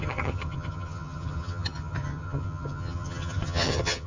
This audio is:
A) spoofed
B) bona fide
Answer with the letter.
A